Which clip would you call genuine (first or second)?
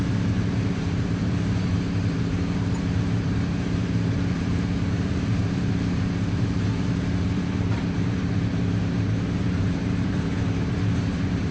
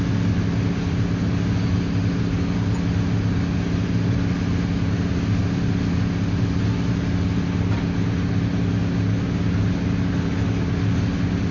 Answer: second